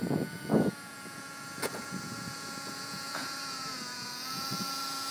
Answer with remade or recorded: remade